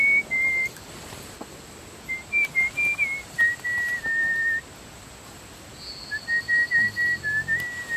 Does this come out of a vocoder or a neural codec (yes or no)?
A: no